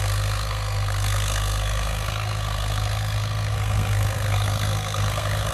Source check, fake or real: fake